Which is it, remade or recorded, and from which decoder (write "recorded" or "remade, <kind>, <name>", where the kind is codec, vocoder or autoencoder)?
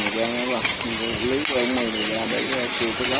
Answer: recorded